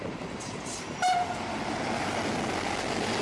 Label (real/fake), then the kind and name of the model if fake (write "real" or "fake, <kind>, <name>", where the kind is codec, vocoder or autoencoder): real